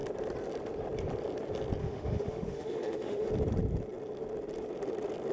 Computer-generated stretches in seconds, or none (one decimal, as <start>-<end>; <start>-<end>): 1.8-3.3